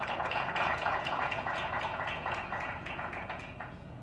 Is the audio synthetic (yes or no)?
yes